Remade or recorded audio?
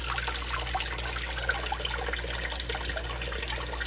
recorded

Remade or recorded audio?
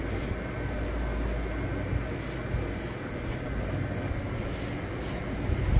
recorded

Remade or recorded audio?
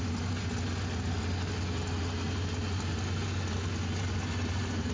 recorded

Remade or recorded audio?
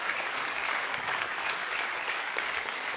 remade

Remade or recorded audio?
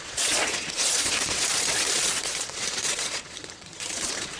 remade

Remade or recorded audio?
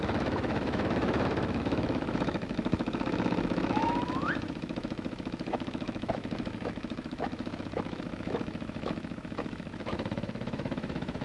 remade